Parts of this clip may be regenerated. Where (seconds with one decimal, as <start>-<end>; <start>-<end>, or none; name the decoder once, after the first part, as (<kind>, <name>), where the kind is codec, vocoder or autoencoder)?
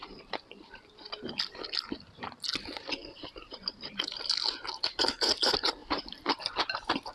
3.0-4.2 (vocoder, BigVGAN v2); 5.8-6.4